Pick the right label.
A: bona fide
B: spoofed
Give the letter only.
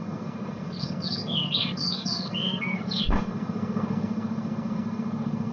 B